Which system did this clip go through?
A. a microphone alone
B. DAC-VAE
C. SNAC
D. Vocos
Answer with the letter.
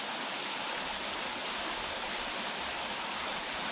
A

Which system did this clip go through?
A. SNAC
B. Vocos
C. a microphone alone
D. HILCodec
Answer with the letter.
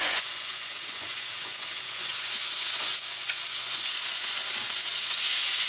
B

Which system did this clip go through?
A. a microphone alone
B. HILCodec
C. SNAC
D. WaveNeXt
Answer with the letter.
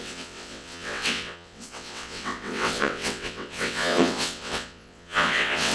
D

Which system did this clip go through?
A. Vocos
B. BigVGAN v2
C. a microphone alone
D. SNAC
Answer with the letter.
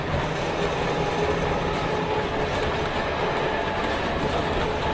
C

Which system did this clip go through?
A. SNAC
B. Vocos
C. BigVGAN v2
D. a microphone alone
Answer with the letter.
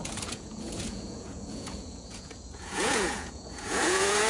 B